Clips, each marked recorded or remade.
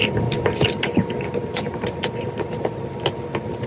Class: remade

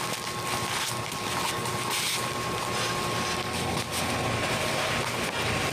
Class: recorded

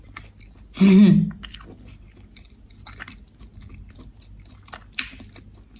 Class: recorded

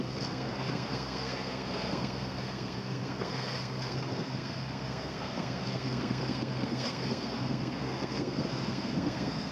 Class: remade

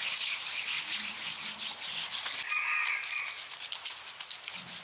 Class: recorded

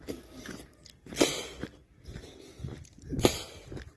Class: remade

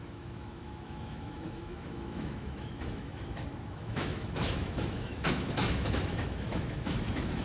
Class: remade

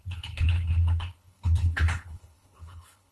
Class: remade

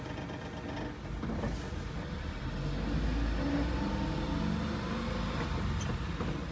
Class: recorded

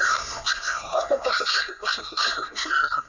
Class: remade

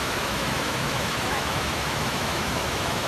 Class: remade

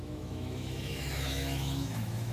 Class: remade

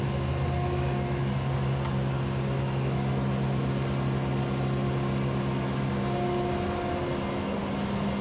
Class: recorded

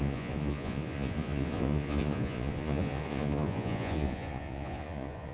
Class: remade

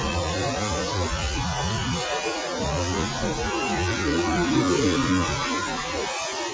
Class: remade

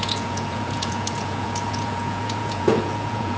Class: remade